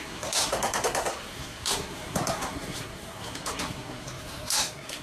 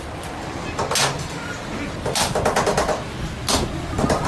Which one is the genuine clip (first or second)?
second